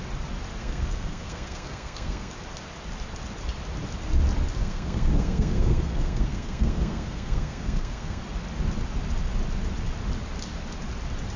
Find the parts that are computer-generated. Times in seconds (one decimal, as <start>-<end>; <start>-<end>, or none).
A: 0.6-2.3; 4.6-8.2